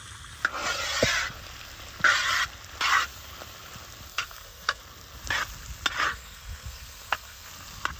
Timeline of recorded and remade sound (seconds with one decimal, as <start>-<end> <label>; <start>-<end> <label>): 0.0-4.1 recorded; 4.1-4.8 remade; 4.8-6.1 recorded; 6.1-7.5 remade; 7.5-8.0 recorded